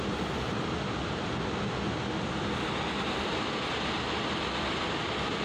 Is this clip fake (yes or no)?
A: no